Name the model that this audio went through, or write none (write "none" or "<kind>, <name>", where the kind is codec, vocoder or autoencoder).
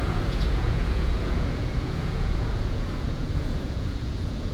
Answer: vocoder, Vocos